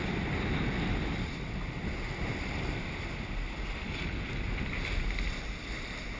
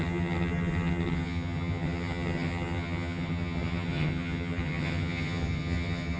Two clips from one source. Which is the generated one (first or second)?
second